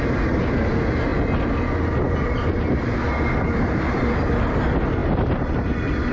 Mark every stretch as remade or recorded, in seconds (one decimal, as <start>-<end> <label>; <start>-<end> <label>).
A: 0.0-6.1 recorded

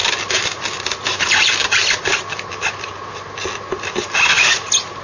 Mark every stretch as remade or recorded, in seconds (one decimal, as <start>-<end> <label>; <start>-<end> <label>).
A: 0.0-5.0 recorded